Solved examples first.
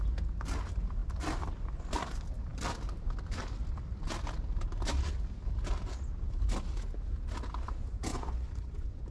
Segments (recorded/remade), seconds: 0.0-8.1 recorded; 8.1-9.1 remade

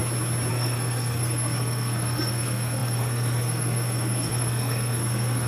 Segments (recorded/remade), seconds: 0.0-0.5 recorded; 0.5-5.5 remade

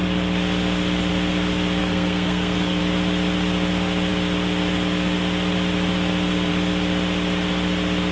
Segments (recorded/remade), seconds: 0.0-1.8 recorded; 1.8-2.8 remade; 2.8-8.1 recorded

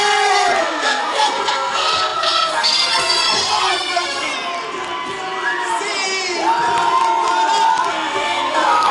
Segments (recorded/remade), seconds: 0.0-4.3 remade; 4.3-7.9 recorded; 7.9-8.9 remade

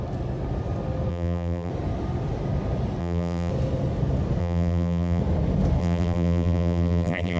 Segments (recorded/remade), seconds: 0.0-1.1 recorded; 1.1-1.7 remade; 1.7-3.0 recorded; 3.0-3.5 remade; 3.5-4.4 recorded; 4.4-5.2 remade; 5.2-5.8 recorded; 5.8-7.4 remade

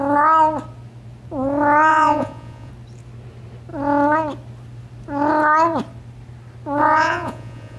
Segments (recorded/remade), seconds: 0.0-1.9 recorded; 1.9-2.7 remade; 2.7-6.8 recorded; 6.8-7.8 remade

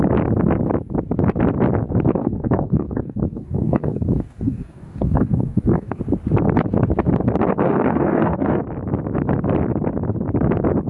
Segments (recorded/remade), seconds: 0.0-2.1 recorded; 2.1-6.0 remade; 6.0-7.5 recorded; 7.5-8.6 remade; 8.6-10.9 recorded